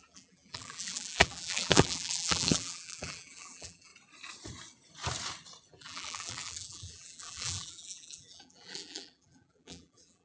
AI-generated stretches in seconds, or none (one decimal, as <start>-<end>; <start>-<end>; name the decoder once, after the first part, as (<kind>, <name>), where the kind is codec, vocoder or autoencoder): 0.0-3.9 (vocoder, BigVGAN v2); 5.7-10.2